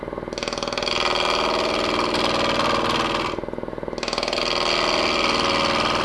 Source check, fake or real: real